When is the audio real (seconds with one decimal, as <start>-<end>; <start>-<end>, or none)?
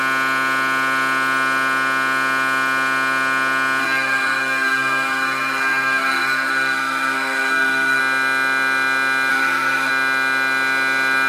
0.0-3.8; 8.0-9.3; 9.9-11.3